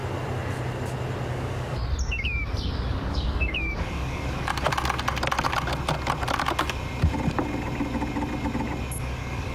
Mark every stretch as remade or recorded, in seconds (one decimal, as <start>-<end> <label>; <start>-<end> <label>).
0.0-1.3 recorded; 1.3-1.8 remade; 1.8-2.7 recorded; 2.7-4.5 remade; 4.5-9.0 recorded; 9.0-9.5 remade